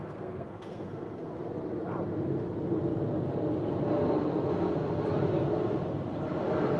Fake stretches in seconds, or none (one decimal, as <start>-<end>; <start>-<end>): 0.0-1.3